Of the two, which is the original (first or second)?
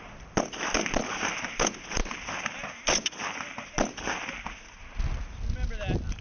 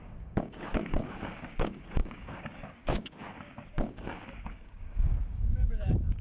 first